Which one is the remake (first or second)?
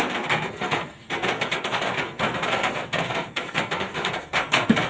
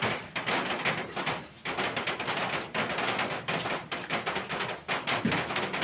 first